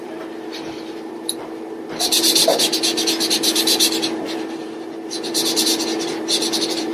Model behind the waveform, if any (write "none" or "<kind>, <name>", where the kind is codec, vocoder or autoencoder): vocoder, BigVGAN v2